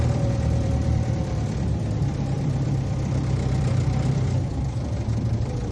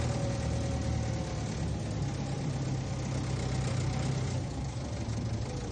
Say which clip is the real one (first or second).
second